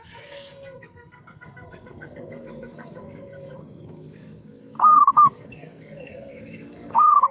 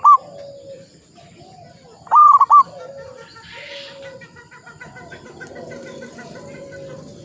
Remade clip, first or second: first